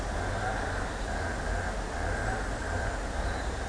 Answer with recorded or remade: recorded